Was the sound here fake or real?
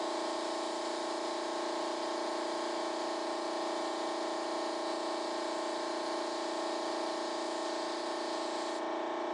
real